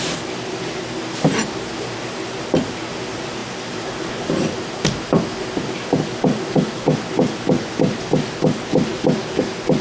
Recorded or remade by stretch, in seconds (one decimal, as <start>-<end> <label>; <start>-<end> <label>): 0.0-3.4 recorded; 3.4-5.1 remade; 5.1-9.8 recorded